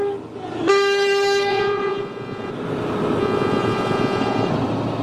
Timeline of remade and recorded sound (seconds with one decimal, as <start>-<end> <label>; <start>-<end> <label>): 0.0-1.5 recorded; 1.5-2.5 remade; 2.5-3.2 recorded; 3.2-4.5 remade; 4.5-5.0 recorded